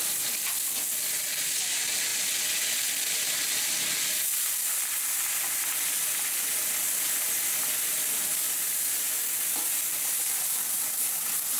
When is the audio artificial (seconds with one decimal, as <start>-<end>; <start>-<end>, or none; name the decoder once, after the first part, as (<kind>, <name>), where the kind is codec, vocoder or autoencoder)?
none